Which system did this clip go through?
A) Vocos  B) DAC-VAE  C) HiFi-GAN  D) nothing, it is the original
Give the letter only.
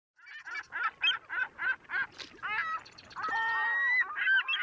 D